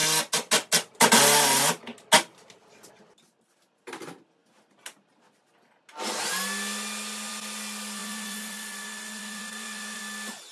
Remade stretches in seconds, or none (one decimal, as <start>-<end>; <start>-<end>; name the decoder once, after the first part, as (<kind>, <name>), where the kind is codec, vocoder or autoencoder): 8.0-10.0 (vocoder, Vocos)